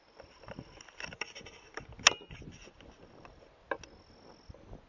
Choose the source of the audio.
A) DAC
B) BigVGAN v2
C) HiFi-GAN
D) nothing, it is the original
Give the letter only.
D